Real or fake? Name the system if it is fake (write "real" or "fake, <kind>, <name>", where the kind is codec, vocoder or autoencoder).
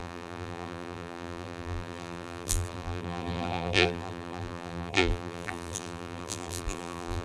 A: fake, vocoder, BigVGAN v2